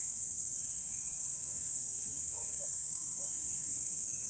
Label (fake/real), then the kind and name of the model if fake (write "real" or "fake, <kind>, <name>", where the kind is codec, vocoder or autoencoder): fake, codec, SNAC